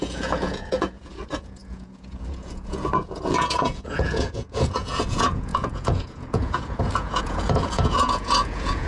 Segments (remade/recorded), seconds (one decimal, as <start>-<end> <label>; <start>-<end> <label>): 0.0-8.9 remade